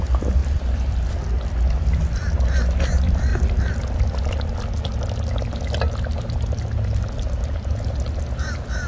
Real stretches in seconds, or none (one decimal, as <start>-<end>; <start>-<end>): 0.0-8.9